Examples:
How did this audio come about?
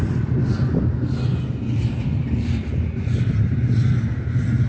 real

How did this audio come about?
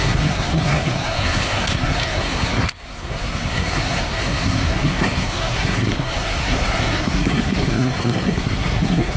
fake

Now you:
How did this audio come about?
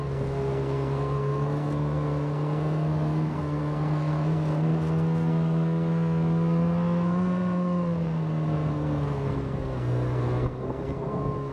fake